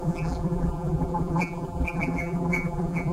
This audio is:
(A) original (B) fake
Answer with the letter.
B